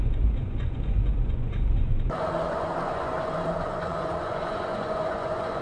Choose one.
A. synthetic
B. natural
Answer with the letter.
A